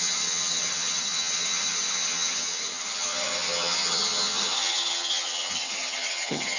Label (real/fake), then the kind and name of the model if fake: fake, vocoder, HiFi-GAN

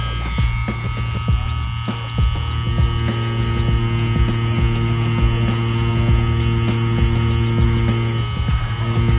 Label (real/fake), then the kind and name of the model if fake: real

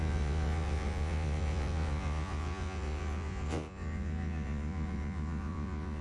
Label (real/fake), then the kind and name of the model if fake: fake, vocoder, Vocos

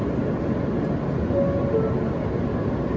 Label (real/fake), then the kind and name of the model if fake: real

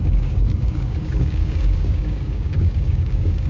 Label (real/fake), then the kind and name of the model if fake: fake, codec, DAC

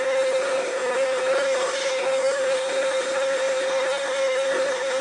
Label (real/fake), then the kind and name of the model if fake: fake, codec, SNAC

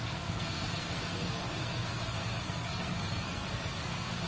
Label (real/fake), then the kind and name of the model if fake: fake, codec, SNAC